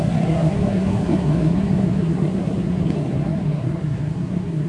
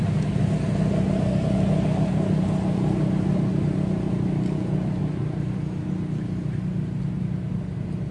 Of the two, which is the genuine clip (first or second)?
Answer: second